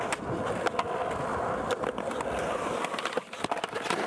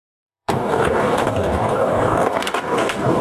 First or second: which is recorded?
first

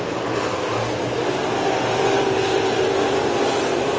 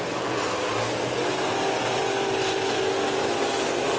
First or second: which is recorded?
second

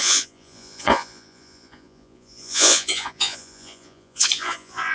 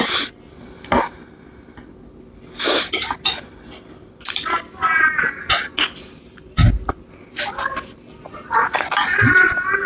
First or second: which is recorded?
second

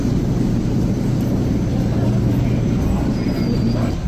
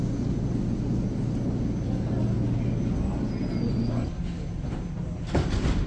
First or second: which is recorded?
second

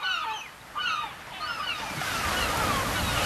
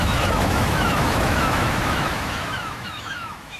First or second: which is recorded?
first